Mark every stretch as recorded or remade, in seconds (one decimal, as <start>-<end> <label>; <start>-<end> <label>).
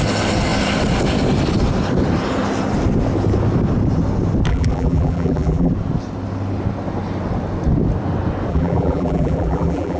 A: 0.0-4.5 recorded; 4.5-5.7 remade; 5.7-8.5 recorded; 8.5-10.0 remade